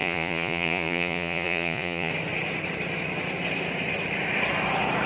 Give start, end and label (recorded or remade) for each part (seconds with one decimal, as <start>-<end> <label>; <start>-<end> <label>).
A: 0.0-2.1 remade; 2.1-5.1 recorded